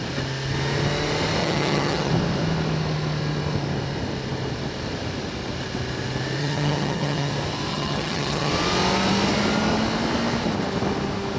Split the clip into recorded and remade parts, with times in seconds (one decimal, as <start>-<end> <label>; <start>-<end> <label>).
0.0-1.4 recorded; 1.4-2.1 remade; 2.1-6.4 recorded; 6.4-7.3 remade; 7.3-7.7 recorded; 7.7-8.5 remade; 8.5-11.4 recorded